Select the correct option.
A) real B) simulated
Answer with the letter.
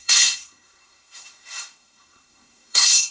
B